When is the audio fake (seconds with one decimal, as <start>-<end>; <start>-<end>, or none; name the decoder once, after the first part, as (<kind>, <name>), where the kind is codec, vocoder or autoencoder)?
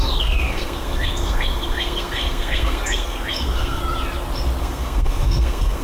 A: 0.0-3.8 (codec, SNAC); 4.6-5.8